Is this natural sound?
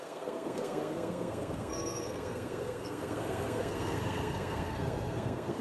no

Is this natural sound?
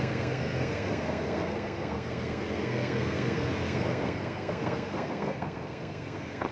no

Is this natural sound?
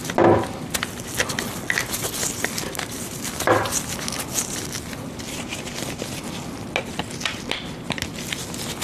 yes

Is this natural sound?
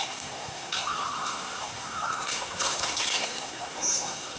no